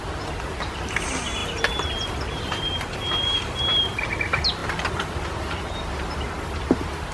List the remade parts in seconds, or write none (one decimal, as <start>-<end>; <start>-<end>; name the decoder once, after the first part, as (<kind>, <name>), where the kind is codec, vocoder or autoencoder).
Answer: none